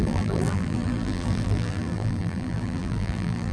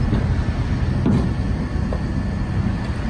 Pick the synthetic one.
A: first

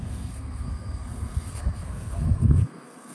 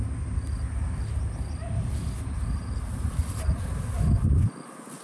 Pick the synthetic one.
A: first